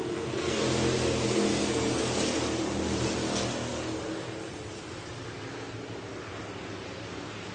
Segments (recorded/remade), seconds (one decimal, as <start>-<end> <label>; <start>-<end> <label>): 0.0-0.6 remade; 0.6-1.5 recorded; 1.5-2.0 remade; 2.0-7.5 recorded